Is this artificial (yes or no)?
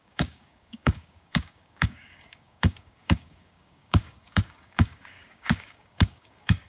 yes